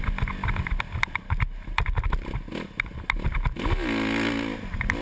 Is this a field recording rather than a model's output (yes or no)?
yes